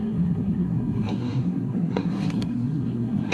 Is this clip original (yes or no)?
no